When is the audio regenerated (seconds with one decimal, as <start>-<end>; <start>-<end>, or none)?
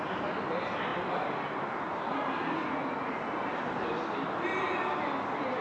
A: none